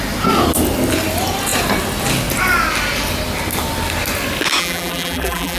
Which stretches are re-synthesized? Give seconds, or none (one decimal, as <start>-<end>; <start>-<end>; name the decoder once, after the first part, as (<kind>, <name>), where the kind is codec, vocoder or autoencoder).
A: 4.6-5.6 (vocoder, BigVGAN v2)